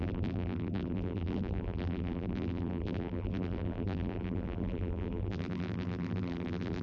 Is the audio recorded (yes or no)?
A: no